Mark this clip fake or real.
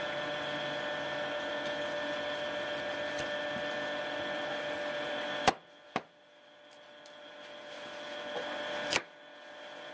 real